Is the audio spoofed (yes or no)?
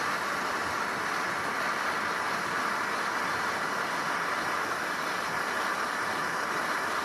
no